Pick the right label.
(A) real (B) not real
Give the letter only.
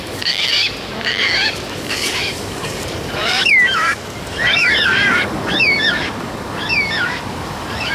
B